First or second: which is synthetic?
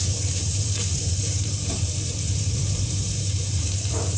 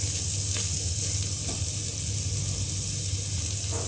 first